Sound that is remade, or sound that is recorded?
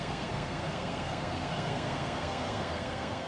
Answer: remade